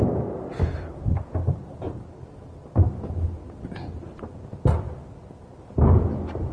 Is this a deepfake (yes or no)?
no